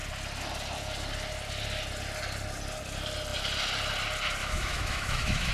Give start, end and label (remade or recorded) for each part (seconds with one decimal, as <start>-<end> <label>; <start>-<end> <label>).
0.0-4.4 recorded; 4.4-5.5 remade